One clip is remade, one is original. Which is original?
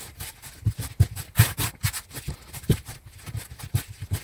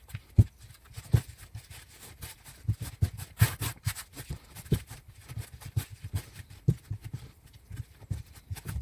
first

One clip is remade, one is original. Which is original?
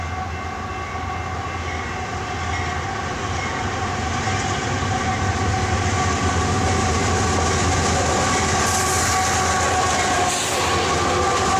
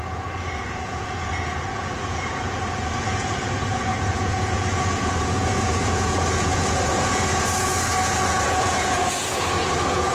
first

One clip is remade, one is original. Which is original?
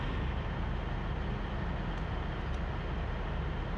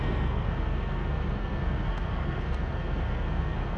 first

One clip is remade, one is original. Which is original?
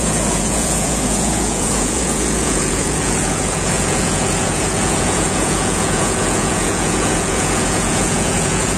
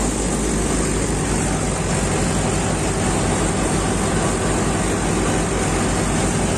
second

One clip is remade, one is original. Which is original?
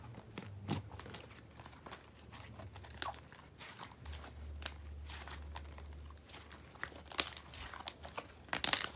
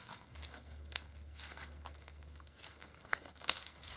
first